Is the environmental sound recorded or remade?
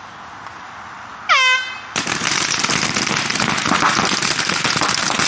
recorded